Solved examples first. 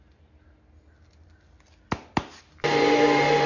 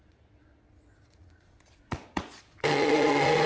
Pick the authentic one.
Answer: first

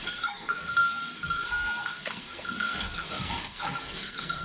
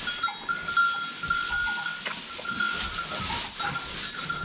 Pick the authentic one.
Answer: second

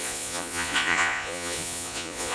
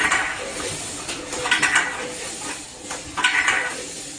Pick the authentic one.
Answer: second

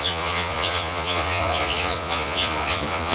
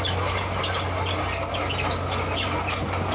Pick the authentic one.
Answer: second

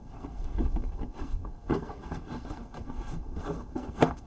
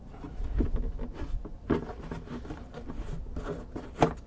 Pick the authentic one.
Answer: second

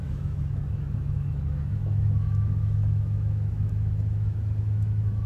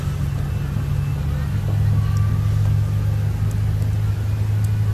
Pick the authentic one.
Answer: second